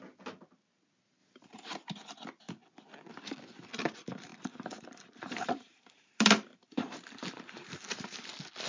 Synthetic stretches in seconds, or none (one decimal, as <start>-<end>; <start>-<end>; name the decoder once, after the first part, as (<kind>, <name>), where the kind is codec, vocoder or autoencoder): 1.2-1.7 (vocoder, BigVGAN v2); 4.3-8.2